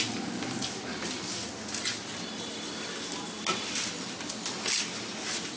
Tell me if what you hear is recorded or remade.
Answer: recorded